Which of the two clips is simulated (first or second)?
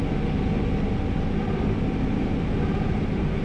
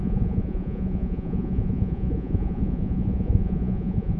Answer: second